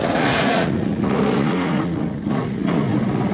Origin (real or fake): fake